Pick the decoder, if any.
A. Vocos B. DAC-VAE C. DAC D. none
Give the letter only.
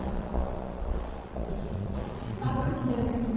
A